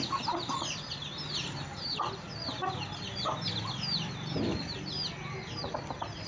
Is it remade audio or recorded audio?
remade